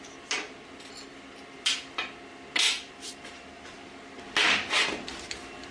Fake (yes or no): no